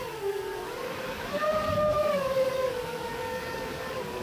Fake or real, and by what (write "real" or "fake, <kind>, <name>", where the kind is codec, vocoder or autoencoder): fake, codec, DAC